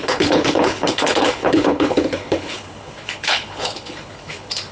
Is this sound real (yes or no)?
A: no